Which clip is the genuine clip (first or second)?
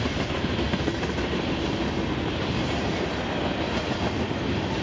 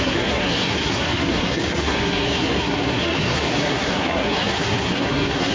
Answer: first